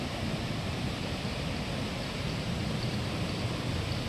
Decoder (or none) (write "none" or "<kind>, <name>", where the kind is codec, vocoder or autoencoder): vocoder, BigVGAN v2